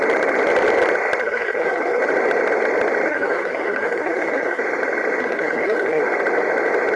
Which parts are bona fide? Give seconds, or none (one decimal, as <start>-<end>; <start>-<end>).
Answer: 0.0-1.2; 2.0-3.1; 4.6-5.2; 6.0-7.0